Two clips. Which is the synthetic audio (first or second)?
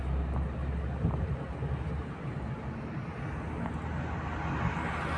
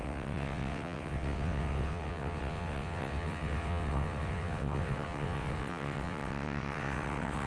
second